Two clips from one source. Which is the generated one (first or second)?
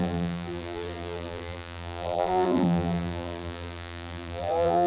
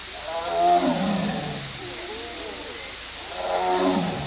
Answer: first